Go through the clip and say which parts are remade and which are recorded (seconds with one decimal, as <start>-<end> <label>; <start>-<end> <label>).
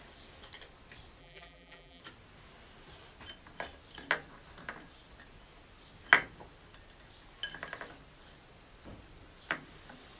0.0-1.2 recorded; 1.2-2.0 remade; 2.0-10.2 recorded